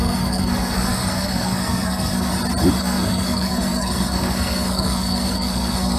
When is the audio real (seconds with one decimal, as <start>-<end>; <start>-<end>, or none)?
2.3-2.8